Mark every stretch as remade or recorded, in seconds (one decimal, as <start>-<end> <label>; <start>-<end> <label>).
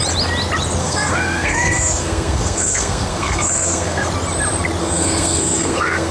0.0-0.8 recorded; 0.8-4.1 remade; 4.1-4.8 recorded; 4.8-6.1 remade